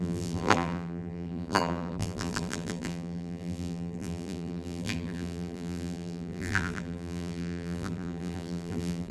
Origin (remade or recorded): remade